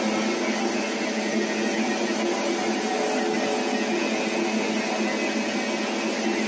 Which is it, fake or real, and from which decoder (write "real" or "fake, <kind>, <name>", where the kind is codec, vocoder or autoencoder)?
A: real